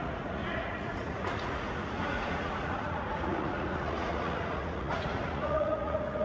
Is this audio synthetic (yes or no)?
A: yes